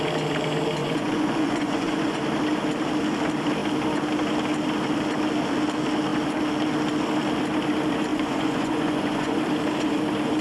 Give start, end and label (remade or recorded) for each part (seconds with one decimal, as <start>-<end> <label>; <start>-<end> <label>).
0.0-0.8 recorded; 0.8-2.2 remade; 2.2-8.1 recorded; 8.1-9.4 remade; 9.4-10.4 recorded